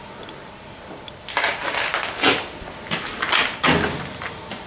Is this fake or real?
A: real